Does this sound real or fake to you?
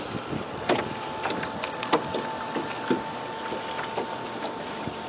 real